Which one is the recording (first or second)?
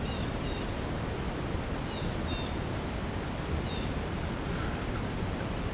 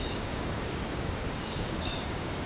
first